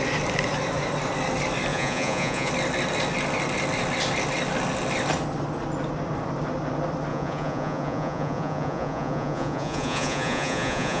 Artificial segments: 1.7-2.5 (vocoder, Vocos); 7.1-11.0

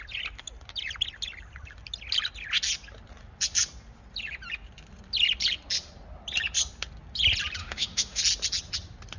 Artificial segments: 7.6-8.2 (autoencoder, DAC-VAE)

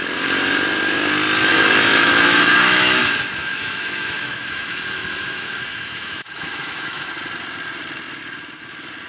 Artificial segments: 1.5-3.0 (autoencoder, DAC-VAE); 3.4-7.1

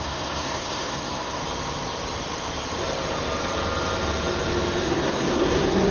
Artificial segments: 0.0-1.4 (codec, SNAC); 4.8-5.9

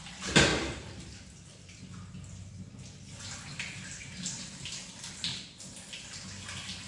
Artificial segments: none

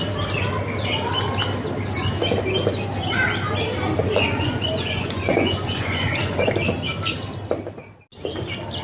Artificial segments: 4.0-6.5 (vocoder, Vocos)